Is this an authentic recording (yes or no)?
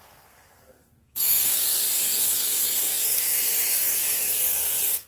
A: no